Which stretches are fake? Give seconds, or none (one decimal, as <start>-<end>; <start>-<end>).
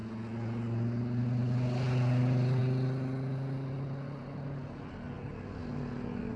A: none